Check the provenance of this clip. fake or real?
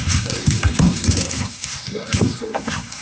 fake